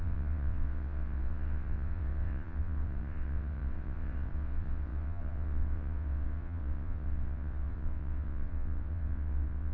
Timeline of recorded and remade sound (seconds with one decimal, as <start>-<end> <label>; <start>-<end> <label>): 0.0-9.7 remade